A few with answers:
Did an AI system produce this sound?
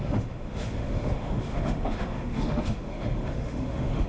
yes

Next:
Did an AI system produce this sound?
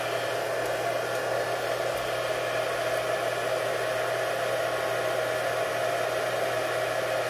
no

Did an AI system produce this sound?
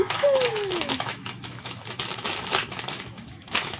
yes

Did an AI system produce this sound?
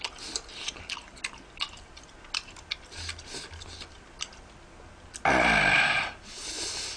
no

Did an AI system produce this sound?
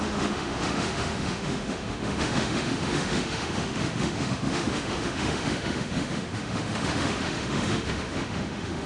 yes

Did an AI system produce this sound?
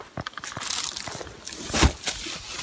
no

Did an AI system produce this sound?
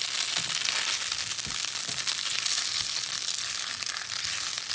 no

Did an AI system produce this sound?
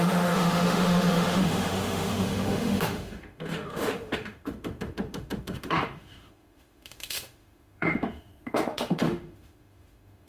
yes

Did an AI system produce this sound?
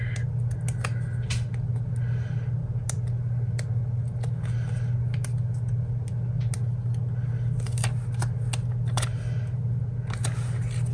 no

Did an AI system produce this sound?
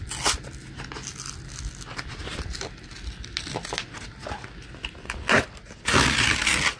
no